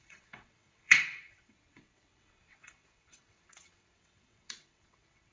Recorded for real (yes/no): no